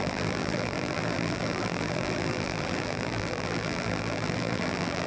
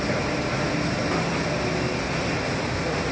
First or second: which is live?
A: second